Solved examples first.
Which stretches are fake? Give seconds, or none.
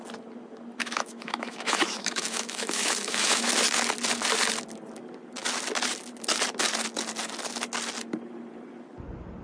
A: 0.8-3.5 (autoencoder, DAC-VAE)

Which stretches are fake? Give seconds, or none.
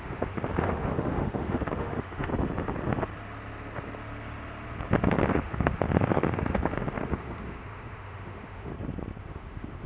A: 0.0-2.3 (autoencoder, DAC-VAE); 5.3-8.7; 9.2-9.9